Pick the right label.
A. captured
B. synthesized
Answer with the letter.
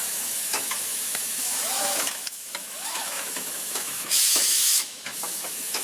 B